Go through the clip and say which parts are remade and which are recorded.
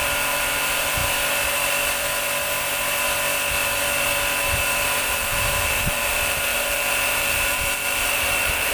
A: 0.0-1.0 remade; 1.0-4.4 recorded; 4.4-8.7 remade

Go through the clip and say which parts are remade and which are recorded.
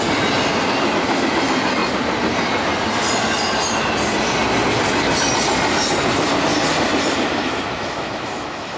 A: 0.0-7.8 recorded; 7.8-8.8 remade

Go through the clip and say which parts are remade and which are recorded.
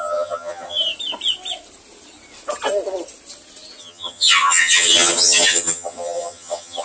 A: 0.0-0.8 remade; 0.8-3.8 recorded; 3.8-6.8 remade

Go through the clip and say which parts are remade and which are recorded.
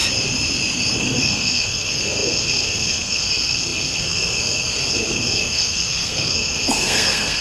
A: 0.0-1.0 recorded; 1.0-7.4 remade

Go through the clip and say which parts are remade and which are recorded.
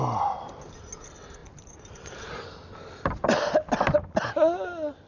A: 0.0-5.1 recorded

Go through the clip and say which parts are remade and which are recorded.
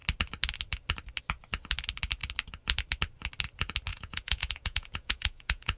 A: 0.0-3.9 recorded; 3.9-5.8 remade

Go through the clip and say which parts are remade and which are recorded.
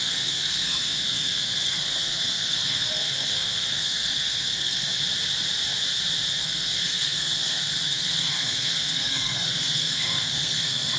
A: 0.0-5.0 remade; 5.0-6.3 recorded; 6.3-11.0 remade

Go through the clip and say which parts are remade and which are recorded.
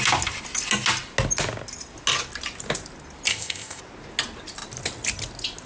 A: 0.0-3.3 recorded; 3.3-3.8 remade; 3.8-5.7 recorded